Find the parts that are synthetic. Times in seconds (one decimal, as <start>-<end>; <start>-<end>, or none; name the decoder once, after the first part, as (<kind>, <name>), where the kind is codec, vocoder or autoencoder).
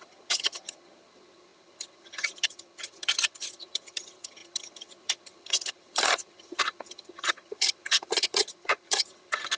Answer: 0.0-9.6 (vocoder, HiFi-GAN)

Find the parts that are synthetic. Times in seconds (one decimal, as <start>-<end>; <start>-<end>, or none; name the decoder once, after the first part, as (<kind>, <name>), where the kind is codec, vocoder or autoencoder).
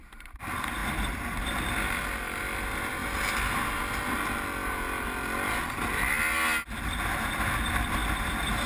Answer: 0.8-2.4 (vocoder, BigVGAN v2)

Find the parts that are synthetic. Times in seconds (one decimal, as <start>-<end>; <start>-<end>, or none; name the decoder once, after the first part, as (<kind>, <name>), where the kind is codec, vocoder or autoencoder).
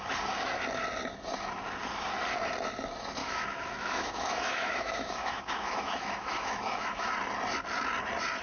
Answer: 3.2-7.1 (autoencoder, DAC-VAE)